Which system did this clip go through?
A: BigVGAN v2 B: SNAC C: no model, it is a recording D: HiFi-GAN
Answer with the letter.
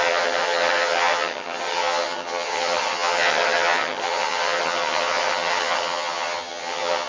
D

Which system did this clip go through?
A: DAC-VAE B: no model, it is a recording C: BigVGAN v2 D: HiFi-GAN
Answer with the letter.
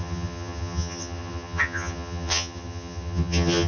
D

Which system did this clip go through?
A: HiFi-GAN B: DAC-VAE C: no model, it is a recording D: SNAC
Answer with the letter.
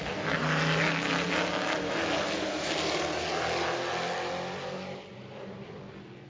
C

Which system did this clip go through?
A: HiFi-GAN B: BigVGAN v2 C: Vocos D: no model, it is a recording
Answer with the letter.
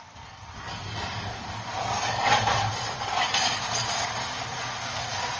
D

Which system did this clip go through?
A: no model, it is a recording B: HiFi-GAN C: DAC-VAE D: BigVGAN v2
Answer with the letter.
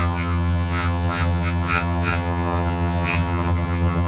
B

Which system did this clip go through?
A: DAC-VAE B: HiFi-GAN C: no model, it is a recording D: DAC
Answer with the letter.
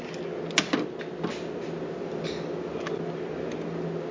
C